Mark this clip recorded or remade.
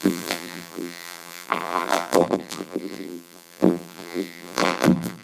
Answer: remade